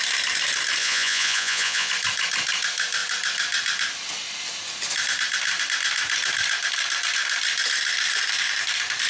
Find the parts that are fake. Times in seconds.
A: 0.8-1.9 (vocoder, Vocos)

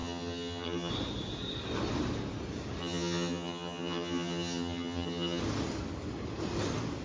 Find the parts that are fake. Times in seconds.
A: 0.0-0.9 (vocoder, HiFi-GAN); 2.8-5.4

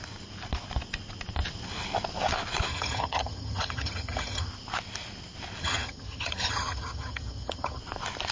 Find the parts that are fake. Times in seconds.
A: 2.7-4.5 (vocoder, HiFi-GAN); 5.6-7.8

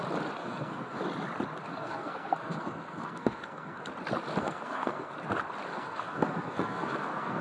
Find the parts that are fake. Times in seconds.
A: 0.4-1.0 (codec, SNAC); 1.7-3.8; 4.4-5.1; 5.7-7.4

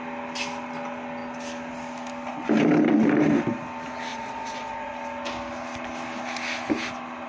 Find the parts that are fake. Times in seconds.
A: 4.1-4.9 (vocoder, Vocos)

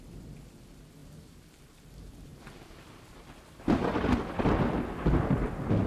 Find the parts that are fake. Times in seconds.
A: 1.0-4.5 (vocoder, BigVGAN v2)